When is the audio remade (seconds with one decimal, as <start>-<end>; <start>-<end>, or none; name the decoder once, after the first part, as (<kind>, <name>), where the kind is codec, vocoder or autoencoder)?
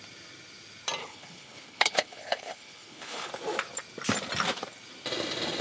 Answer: 1.0-3.3 (codec, HILCodec)